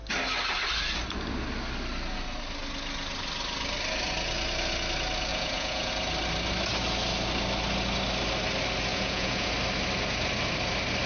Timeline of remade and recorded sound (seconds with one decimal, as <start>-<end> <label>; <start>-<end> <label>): 0.0-5.3 recorded; 5.3-5.9 remade; 5.9-8.9 recorded; 8.9-9.5 remade; 9.5-11.1 recorded